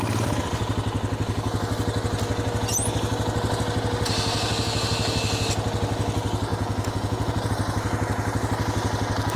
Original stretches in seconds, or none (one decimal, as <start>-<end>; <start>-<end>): 0.0-6.5; 7.5-9.4